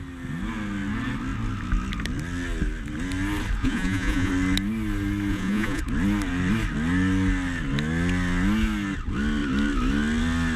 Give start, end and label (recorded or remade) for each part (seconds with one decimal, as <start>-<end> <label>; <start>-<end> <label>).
0.0-3.6 recorded; 3.6-4.3 remade; 4.3-5.3 recorded; 5.3-5.8 remade; 5.8-10.6 recorded